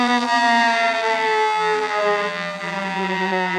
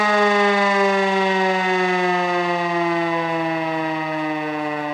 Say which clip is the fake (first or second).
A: first